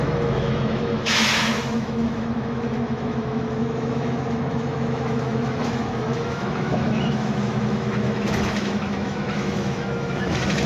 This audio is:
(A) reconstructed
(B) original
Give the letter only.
A